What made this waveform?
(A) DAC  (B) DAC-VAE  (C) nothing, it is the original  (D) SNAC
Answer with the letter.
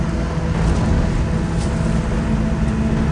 C